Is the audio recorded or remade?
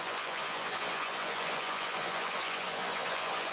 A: remade